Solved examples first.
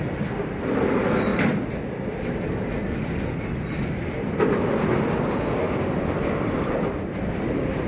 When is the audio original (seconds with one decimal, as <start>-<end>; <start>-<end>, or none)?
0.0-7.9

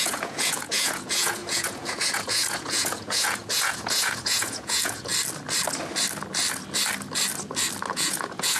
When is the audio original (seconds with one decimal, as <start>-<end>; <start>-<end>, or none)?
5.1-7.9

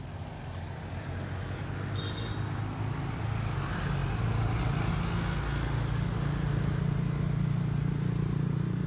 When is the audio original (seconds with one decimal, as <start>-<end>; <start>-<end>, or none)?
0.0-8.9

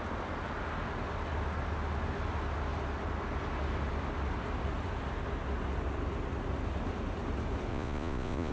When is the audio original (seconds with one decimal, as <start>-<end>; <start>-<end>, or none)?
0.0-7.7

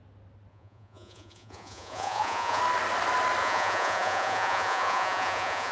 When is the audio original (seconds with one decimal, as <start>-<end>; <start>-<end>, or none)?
0.0-0.5; 2.6-3.4